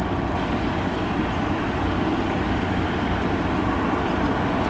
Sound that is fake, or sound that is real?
real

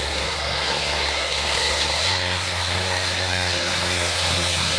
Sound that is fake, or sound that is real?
fake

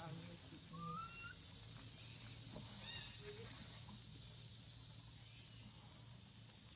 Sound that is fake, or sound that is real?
real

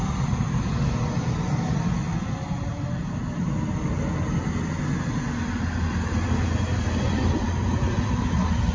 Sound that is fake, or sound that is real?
real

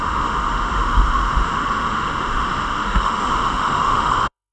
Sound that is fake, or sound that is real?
fake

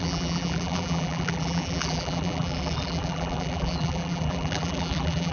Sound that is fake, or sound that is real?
fake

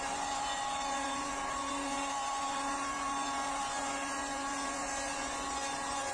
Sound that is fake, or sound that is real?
fake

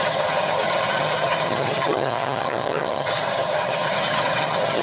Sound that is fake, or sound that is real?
fake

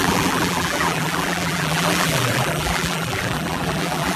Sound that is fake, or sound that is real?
fake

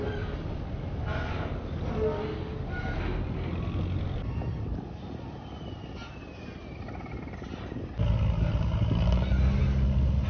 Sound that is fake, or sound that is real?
real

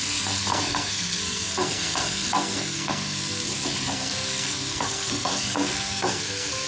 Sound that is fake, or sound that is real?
fake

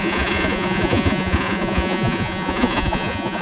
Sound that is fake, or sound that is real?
fake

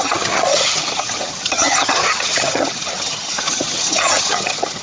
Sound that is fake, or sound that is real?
fake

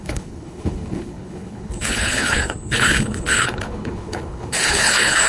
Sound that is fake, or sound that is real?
fake